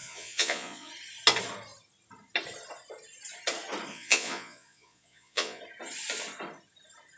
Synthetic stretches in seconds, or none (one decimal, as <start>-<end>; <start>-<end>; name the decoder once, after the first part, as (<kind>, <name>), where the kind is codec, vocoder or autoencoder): 0.0-0.9 (vocoder, Vocos); 3.9-5.6